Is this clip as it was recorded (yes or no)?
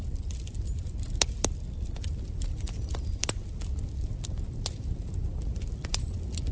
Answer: yes